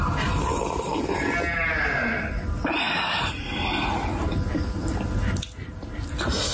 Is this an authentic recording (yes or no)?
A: yes